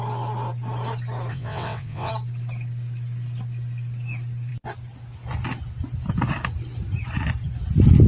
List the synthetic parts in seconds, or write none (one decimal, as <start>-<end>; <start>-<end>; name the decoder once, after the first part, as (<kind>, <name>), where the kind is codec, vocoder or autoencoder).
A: 1.3-2.1 (vocoder, WaveNeXt)